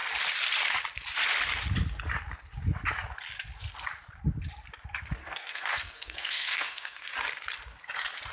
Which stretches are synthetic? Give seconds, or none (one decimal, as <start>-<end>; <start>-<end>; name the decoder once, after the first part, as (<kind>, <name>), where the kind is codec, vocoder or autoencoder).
5.2-7.1 (codec, SNAC)